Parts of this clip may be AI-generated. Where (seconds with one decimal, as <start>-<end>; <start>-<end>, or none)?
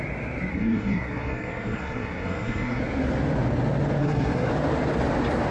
0.5-2.8; 4.0-4.5